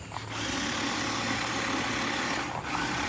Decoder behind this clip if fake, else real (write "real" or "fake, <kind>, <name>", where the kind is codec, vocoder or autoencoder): real